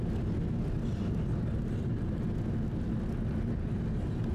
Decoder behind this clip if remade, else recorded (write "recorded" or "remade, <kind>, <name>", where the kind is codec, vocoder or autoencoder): recorded